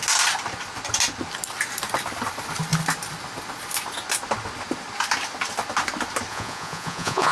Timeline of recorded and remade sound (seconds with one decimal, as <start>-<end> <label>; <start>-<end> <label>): 0.0-6.3 recorded; 6.3-7.3 remade